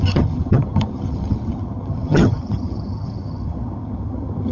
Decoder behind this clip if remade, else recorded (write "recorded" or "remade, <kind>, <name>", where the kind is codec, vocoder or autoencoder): remade, vocoder, HiFi-GAN